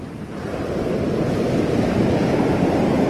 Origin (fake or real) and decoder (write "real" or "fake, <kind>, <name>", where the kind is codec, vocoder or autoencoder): real